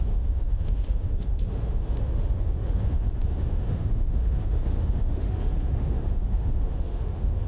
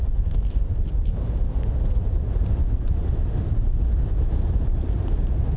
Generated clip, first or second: first